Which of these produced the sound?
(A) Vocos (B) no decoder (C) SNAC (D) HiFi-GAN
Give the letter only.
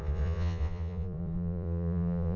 A